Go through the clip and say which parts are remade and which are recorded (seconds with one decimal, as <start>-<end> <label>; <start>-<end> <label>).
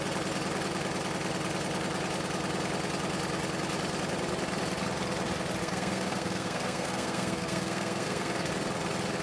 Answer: 0.0-5.6 recorded; 5.6-8.5 remade; 8.5-9.2 recorded